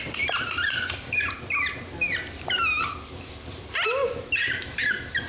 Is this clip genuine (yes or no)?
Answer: yes